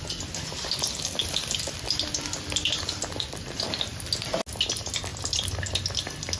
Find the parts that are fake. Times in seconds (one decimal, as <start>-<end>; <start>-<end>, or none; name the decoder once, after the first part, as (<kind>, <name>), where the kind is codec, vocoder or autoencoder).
1.2-3.8 (vocoder, BigVGAN v2); 5.1-5.6